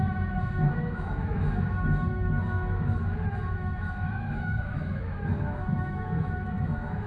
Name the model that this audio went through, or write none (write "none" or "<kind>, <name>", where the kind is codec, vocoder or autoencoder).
autoencoder, DAC-VAE